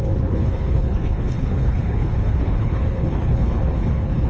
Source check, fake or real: fake